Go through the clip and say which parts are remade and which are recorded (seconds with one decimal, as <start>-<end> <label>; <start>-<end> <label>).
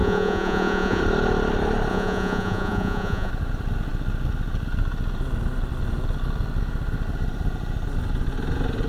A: 0.0-1.0 remade; 1.0-1.9 recorded; 1.9-3.3 remade; 3.3-8.9 recorded